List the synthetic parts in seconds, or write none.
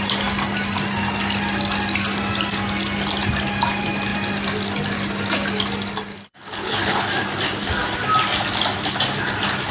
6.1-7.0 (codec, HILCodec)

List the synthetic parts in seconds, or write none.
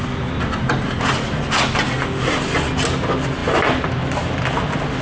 none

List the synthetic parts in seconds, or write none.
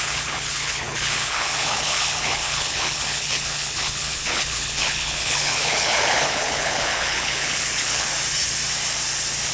0.0-8.1 (codec, HILCodec)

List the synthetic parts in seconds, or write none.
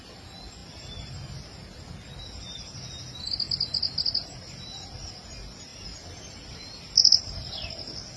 none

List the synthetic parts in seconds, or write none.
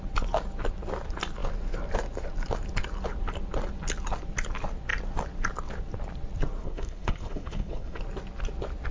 6.6-8.0 (codec, HILCodec)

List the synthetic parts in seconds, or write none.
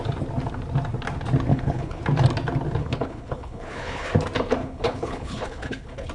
1.5-2.0 (codec, HILCodec); 2.8-4.1; 4.6-6.1